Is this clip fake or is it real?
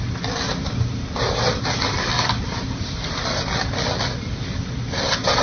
real